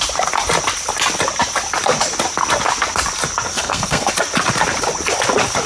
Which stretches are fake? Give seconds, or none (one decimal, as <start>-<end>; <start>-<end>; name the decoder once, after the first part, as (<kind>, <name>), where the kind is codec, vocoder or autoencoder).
3.5-4.1 (codec, SNAC)